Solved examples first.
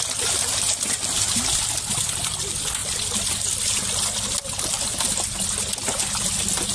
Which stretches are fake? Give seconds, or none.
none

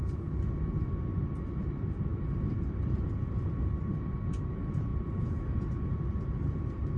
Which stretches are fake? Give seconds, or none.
none